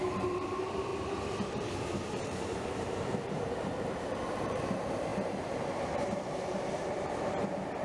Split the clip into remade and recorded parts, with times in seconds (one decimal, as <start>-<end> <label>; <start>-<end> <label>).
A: 0.0-0.9 remade; 0.9-1.5 recorded; 1.5-7.8 remade